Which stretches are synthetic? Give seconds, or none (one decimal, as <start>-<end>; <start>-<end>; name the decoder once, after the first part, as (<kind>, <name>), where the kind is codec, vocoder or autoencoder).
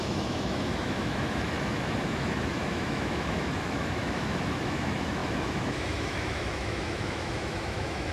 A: 0.0-8.1 (autoencoder, DAC-VAE)